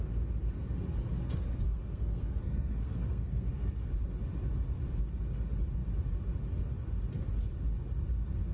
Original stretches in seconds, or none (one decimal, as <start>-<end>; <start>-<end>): 0.0-1.2; 3.9-8.5